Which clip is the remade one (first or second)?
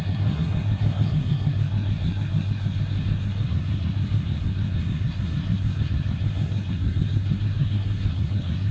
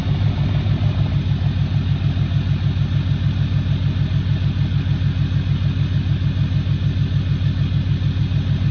first